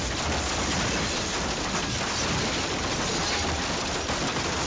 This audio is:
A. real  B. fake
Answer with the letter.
A